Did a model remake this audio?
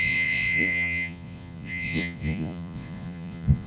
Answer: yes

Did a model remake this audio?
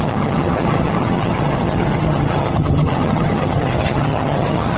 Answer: yes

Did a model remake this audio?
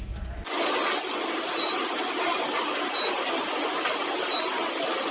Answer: no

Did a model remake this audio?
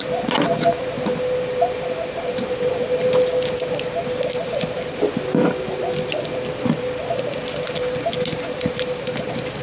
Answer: no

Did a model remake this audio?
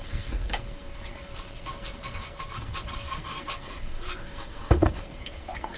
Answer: yes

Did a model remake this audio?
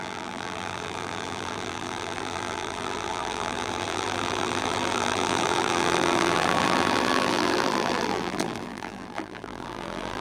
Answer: yes